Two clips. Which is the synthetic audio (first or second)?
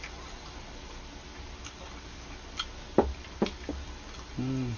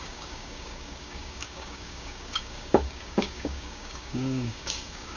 second